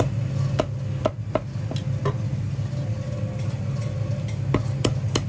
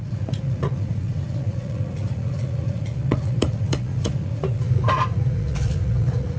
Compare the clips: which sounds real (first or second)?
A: first